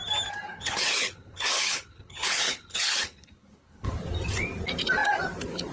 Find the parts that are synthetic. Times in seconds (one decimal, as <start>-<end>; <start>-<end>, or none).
0.5-3.9